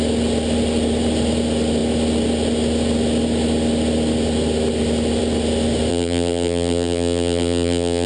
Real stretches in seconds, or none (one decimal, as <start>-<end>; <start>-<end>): 0.0-5.9